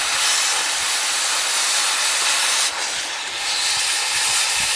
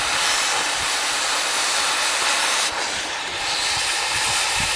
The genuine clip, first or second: first